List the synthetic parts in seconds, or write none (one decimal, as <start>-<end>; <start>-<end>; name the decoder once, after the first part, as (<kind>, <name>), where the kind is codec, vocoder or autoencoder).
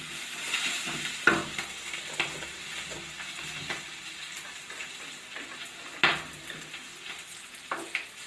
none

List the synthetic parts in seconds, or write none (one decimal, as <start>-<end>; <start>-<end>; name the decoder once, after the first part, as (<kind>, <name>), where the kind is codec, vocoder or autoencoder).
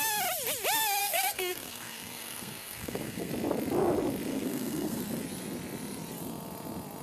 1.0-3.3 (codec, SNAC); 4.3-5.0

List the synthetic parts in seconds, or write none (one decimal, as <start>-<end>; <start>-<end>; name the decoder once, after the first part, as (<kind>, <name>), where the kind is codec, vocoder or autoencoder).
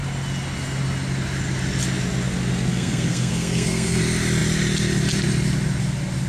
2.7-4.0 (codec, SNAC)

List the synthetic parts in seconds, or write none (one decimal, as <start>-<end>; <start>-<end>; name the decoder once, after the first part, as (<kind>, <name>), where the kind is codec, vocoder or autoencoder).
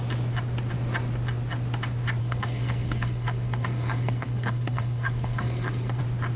2.2-6.0 (codec, SNAC)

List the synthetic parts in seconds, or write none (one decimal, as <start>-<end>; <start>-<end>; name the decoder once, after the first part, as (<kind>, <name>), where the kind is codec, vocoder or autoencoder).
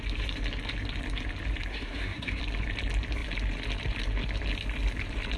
1.7-2.4 (codec, SNAC)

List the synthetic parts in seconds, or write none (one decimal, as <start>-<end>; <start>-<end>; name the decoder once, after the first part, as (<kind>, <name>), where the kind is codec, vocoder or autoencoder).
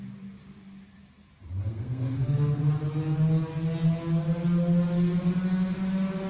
1.7-2.6 (codec, SNAC)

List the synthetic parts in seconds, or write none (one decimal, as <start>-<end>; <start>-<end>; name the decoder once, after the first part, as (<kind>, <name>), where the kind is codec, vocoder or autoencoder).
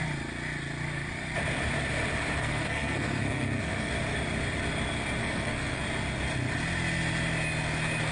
2.4-3.9 (codec, SNAC); 5.2-5.8